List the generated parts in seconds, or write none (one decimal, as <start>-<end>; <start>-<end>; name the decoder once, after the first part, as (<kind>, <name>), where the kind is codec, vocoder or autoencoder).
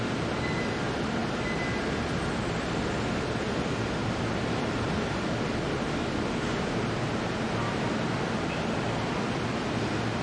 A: none